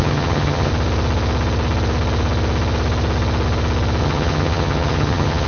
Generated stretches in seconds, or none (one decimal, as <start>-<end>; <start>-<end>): 0.0-0.7; 4.0-5.5